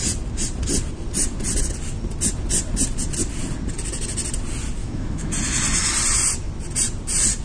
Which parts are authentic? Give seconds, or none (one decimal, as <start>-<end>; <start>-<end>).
0.0-4.8; 5.3-7.4